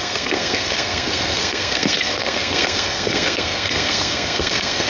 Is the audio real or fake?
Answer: fake